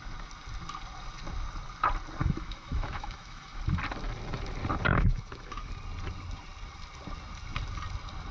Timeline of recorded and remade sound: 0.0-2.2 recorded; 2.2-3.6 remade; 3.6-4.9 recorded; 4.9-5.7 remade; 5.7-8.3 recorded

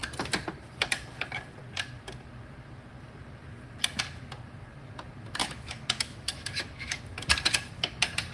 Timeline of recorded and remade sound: 0.0-5.4 recorded; 5.4-7.0 remade; 7.0-8.3 recorded

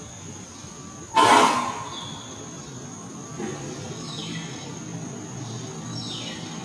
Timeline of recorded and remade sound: 0.0-6.6 recorded

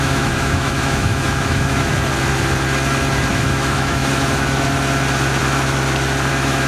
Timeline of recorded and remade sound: 0.0-1.9 remade; 1.9-3.3 recorded; 3.3-4.0 remade; 4.0-6.3 recorded; 6.3-6.7 remade

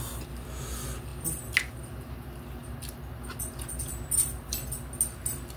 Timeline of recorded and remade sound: 0.0-5.6 recorded

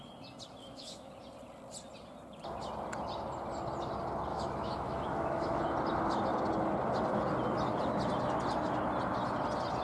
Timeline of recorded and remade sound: 0.0-0.6 recorded; 0.6-1.1 remade; 1.1-4.3 recorded; 4.3-5.6 remade; 5.6-9.8 recorded

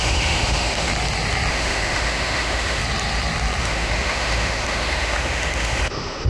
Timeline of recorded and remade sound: 0.0-0.9 remade; 0.9-1.5 recorded; 1.5-2.8 remade; 2.8-3.6 recorded; 3.6-6.3 remade

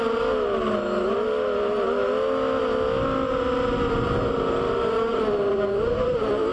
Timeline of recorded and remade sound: 0.0-6.5 recorded